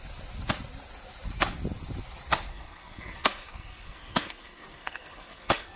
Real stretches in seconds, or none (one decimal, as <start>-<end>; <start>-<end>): 0.0-2.5